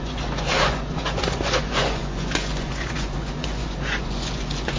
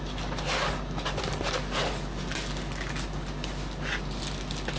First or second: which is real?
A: second